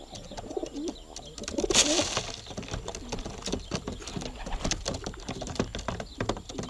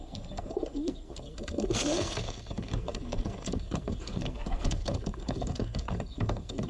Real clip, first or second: first